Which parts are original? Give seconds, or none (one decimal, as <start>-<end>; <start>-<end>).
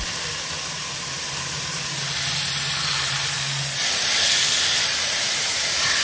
0.0-4.9; 5.6-6.0